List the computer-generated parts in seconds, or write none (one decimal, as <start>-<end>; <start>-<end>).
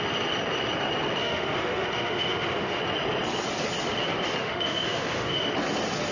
1.2-2.8; 4.4-5.5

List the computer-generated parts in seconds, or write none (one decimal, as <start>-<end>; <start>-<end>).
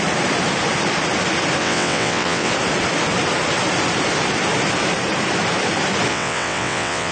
1.6-2.5; 6.1-7.1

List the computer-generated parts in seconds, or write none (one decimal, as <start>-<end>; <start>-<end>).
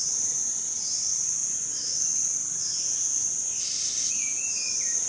3.6-4.1